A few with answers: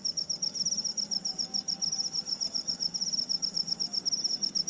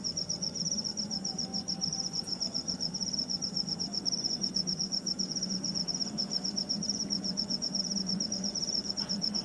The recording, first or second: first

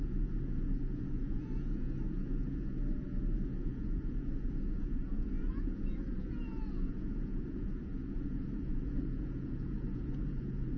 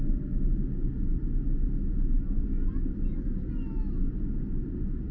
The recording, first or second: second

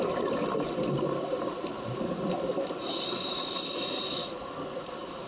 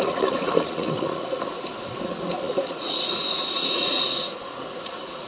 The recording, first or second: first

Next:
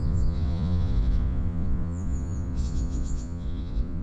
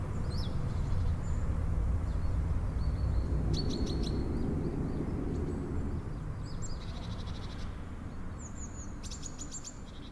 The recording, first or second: second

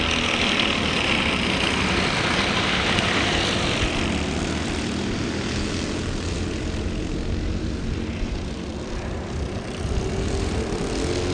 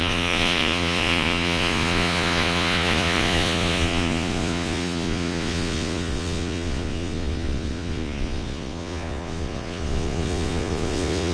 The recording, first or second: first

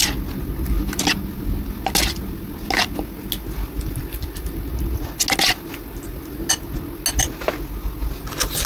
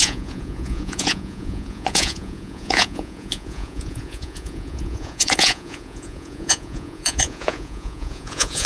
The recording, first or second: first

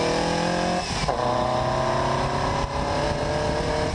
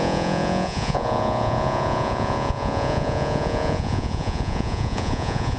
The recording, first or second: first